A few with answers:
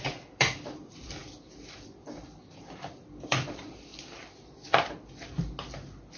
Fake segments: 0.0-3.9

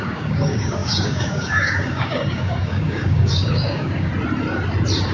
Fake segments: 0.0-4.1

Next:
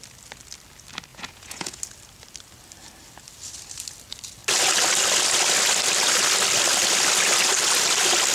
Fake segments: 1.1-1.8

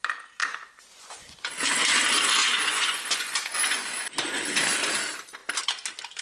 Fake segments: 0.4-1.6; 2.4-3.9

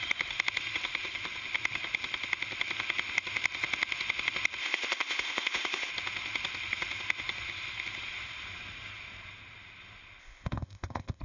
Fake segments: 4.6-5.9; 10.2-11.2

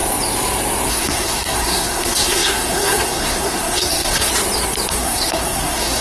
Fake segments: 0.9-4.3; 4.9-6.0

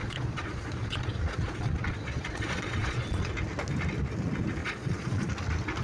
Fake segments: 0.0-3.3; 4.6-5.3